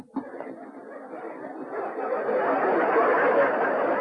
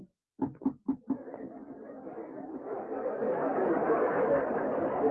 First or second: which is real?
first